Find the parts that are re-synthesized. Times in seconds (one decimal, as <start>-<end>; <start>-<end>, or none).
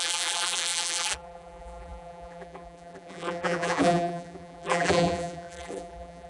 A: 0.0-6.3